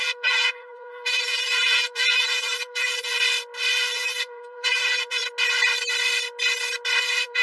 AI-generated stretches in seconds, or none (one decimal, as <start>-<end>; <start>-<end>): 0.0-3.1; 3.7-5.2; 7.0-7.4